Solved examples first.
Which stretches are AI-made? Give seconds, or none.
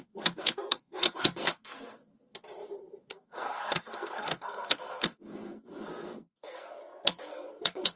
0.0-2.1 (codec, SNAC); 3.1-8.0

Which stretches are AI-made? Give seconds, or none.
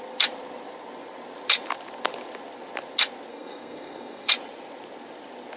3.3-4.3 (codec, SNAC)